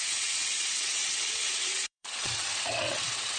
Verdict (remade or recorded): remade